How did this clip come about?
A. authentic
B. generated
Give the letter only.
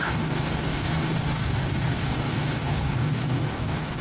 B